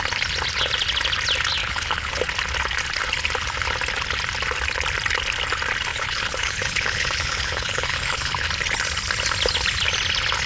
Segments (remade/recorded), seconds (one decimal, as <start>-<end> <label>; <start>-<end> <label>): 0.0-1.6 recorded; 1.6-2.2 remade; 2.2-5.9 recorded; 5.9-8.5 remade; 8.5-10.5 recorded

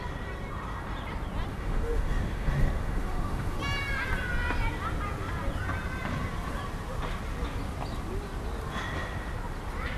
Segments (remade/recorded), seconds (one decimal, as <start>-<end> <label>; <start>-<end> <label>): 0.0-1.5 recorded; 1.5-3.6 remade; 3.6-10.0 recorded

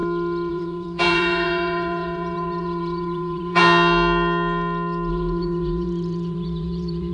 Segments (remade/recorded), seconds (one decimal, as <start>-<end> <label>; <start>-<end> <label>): 0.0-0.5 recorded; 0.5-3.6 remade; 3.6-5.1 recorded; 5.1-7.1 remade

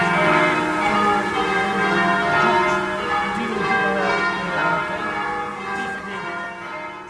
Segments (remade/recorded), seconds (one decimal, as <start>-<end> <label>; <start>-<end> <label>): 0.0-7.1 recorded

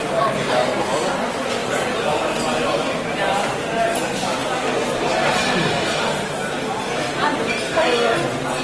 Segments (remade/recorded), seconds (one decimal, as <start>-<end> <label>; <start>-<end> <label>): 0.0-1.6 recorded; 1.6-3.9 remade; 3.9-8.6 recorded

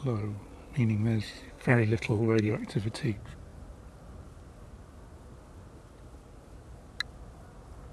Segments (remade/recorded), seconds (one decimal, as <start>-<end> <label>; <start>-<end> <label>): 0.0-1.5 recorded; 1.5-2.5 remade; 2.5-7.9 recorded